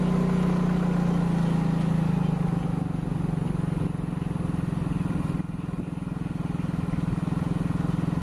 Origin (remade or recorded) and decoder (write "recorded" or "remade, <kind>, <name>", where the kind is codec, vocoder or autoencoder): recorded